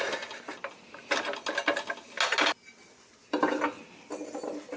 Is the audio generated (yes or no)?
no